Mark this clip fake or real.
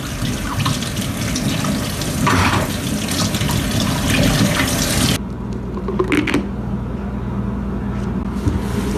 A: real